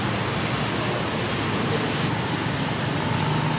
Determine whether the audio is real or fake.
real